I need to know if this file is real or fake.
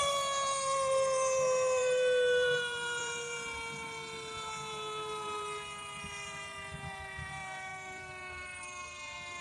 fake